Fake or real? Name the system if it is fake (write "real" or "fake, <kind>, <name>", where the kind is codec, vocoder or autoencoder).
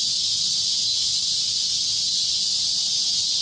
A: real